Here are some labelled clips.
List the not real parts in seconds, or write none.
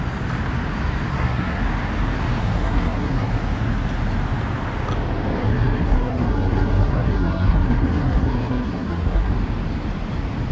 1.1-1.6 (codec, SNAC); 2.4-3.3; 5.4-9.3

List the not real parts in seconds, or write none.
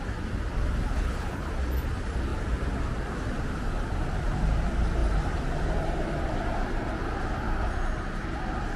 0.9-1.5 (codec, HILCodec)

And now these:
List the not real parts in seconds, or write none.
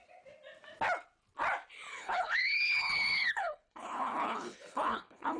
1.9-5.4 (codec, HILCodec)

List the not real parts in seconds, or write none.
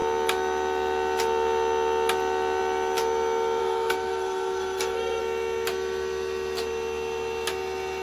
3.6-5.2 (codec, SNAC)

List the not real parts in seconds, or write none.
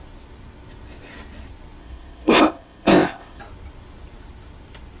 1.8-3.4 (codec, ZipCodec)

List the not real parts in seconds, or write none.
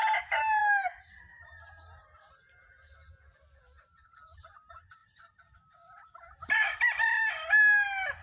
none